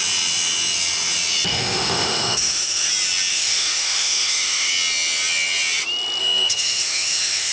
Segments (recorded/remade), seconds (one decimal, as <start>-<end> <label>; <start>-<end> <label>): 0.0-1.5 recorded; 1.5-2.9 remade; 2.9-3.3 recorded; 3.3-4.7 remade; 4.7-6.2 recorded; 6.2-7.5 remade